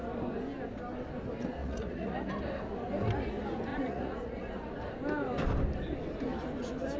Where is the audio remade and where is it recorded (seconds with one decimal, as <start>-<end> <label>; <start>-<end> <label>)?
0.0-1.6 recorded; 1.6-2.3 remade; 2.3-3.7 recorded; 3.7-4.7 remade; 4.7-7.0 recorded